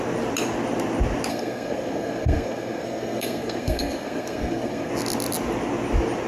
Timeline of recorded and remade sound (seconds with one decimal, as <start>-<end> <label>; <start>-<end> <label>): 0.0-1.3 recorded; 1.3-4.9 remade; 4.9-6.3 recorded